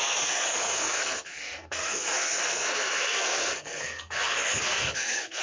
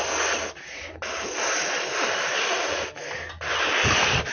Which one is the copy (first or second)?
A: first